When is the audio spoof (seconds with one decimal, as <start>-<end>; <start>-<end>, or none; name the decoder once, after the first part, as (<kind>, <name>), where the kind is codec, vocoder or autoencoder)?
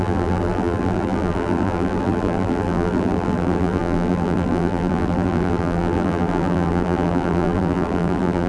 0.0-8.5 (vocoder, BigVGAN v2)